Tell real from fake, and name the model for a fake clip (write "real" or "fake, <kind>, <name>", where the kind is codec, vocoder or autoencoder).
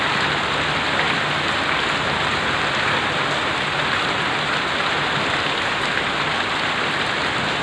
real